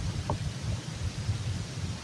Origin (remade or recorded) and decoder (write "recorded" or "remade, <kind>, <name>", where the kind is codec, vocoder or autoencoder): remade, vocoder, BigVGAN v2